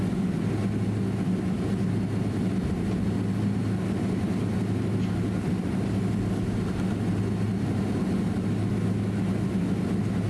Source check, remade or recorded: recorded